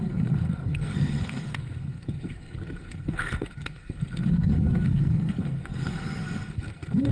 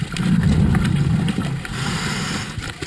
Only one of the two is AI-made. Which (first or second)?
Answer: first